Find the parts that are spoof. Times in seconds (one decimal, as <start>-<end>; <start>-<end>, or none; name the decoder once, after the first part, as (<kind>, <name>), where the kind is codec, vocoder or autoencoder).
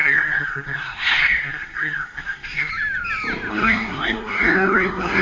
0.0-2.7 (codec, SNAC); 3.5-5.2